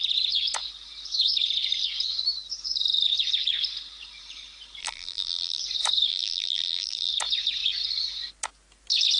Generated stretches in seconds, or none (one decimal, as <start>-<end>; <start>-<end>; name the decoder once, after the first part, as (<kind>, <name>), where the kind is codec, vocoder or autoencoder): 4.8-5.6 (vocoder, BigVGAN v2); 6.1-7.1